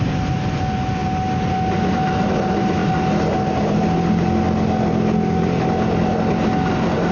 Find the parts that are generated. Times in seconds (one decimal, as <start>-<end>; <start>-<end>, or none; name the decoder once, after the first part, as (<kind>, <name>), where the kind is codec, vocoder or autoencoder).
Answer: none